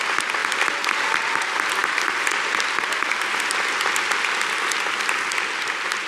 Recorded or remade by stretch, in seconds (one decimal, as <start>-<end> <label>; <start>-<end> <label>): 0.0-6.1 recorded